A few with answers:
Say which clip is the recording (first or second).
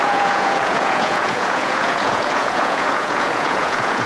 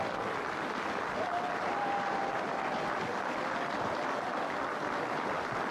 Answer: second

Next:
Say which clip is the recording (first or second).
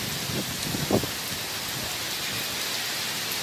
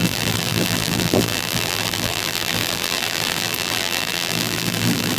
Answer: first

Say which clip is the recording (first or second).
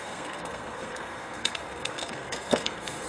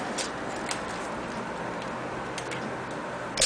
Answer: second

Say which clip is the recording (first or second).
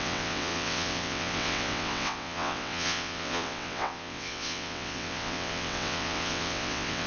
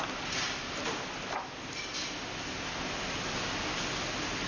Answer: second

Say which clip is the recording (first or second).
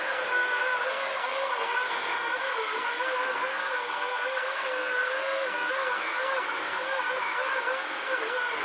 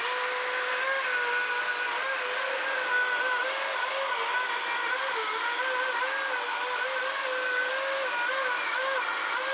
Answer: second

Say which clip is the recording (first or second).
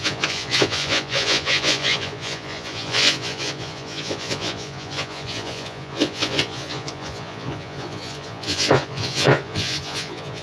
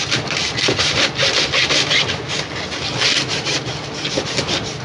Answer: second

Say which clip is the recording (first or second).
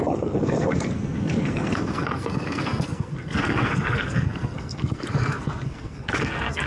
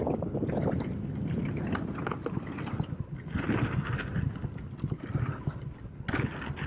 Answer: second